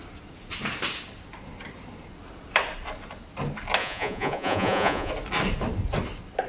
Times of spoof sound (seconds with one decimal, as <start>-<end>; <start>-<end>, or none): 3.8-5.1